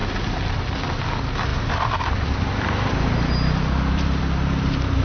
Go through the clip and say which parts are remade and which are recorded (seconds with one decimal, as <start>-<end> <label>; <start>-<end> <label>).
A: 0.0-0.6 remade; 0.6-1.5 recorded; 1.5-4.2 remade; 4.2-5.0 recorded